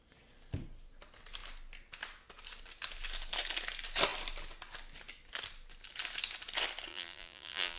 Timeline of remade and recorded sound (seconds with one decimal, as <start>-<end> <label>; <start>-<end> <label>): 0.0-6.9 recorded; 6.9-7.8 remade